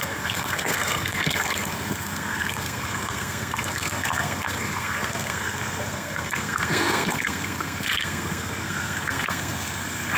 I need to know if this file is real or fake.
fake